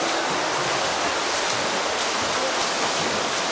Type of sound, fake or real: real